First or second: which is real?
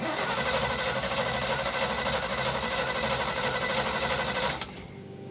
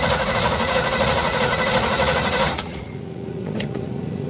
first